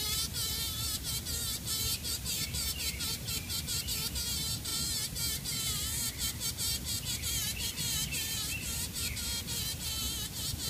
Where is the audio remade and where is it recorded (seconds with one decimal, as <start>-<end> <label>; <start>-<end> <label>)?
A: 0.0-10.7 remade